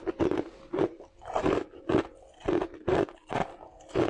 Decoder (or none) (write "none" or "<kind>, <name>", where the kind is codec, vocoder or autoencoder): none